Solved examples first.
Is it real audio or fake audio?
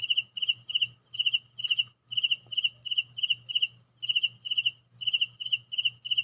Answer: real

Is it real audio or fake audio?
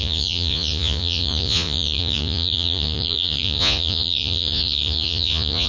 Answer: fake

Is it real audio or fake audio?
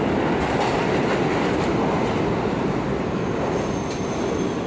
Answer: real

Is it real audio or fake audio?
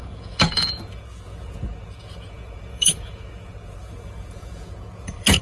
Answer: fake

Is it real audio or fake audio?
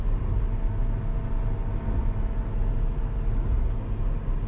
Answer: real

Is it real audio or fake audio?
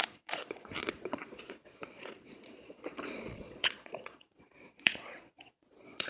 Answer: fake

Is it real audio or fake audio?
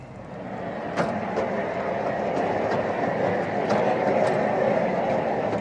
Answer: real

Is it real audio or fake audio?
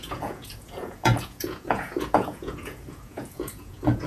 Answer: fake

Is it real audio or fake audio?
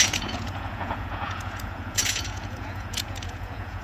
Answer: fake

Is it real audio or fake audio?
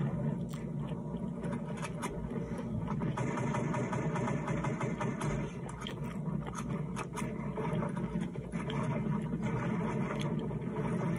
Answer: real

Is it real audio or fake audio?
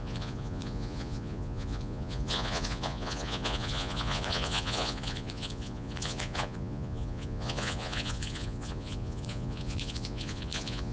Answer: fake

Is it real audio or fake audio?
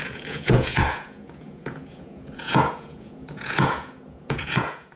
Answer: fake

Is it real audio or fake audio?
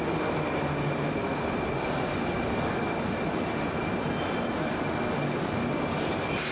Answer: real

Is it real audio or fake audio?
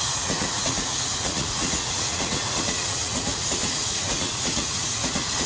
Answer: fake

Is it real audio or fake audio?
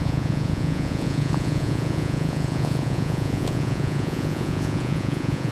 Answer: fake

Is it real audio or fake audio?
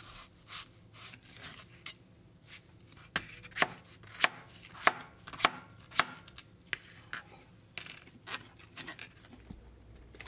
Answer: real